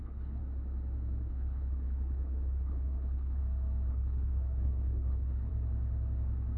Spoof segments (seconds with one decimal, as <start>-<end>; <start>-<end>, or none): 0.0-0.4; 1.3-3.4; 3.9-5.5